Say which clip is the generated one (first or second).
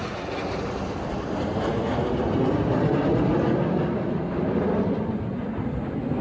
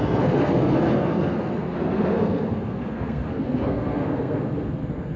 second